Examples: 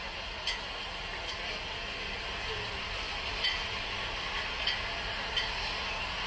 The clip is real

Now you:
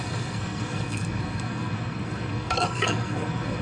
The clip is fake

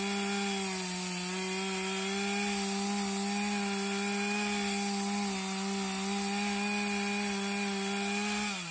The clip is real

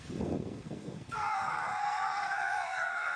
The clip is fake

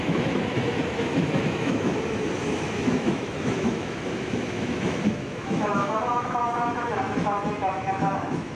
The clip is fake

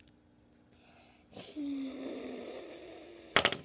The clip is real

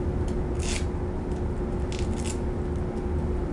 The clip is real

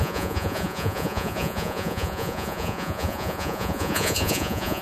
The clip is fake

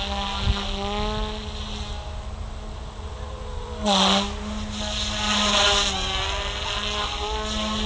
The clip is real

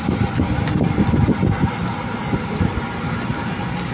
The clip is real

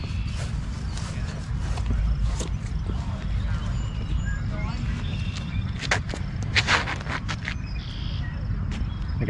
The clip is real